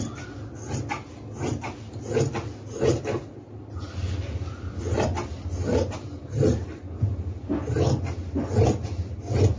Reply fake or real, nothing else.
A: real